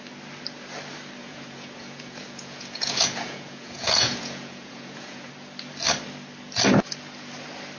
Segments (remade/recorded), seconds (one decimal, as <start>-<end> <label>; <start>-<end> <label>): 0.0-1.2 recorded; 1.2-5.3 remade; 5.3-7.8 recorded